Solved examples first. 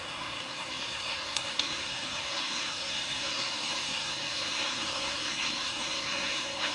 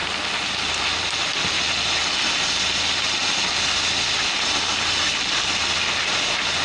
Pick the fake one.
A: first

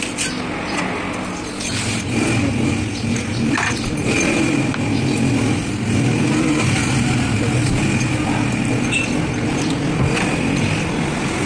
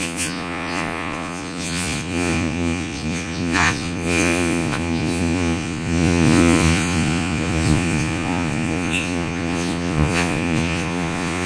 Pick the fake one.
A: second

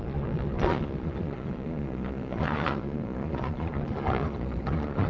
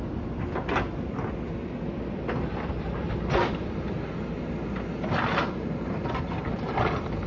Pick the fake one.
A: first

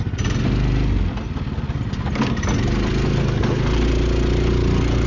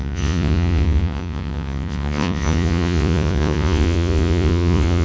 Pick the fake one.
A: second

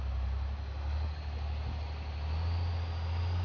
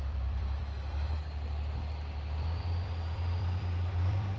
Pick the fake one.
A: second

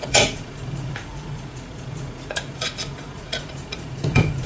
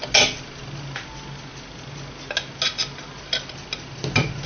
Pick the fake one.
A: first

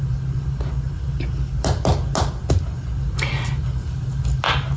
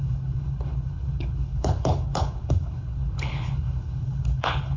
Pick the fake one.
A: second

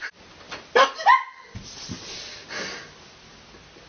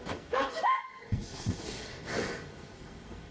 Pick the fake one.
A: second